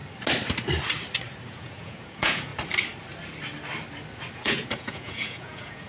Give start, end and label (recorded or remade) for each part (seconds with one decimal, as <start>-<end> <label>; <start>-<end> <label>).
0.0-1.5 recorded; 1.5-2.5 remade; 2.5-4.3 recorded; 4.3-5.9 remade